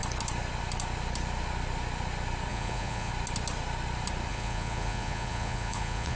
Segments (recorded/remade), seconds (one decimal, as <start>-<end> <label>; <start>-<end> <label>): 0.0-2.5 recorded; 2.5-3.1 remade; 3.1-4.3 recorded; 4.3-6.2 remade